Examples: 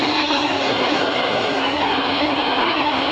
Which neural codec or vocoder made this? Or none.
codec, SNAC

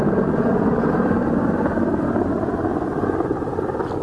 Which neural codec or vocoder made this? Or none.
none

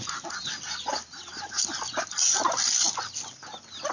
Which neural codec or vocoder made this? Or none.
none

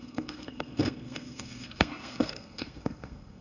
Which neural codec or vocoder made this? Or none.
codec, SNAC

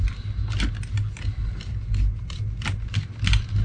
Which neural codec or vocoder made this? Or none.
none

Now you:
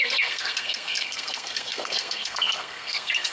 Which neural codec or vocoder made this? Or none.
codec, SNAC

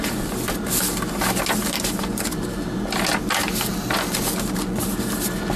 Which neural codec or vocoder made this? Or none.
none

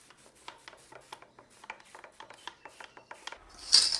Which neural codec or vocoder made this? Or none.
none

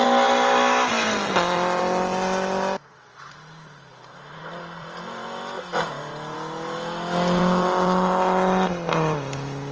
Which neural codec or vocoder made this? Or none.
none